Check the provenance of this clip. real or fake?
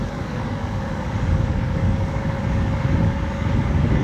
fake